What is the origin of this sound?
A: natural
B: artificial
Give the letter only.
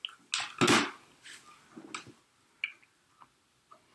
A